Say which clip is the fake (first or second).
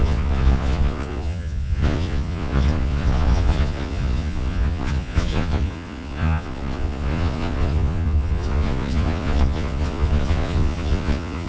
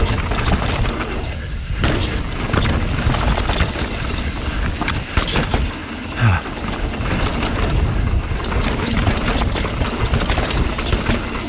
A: first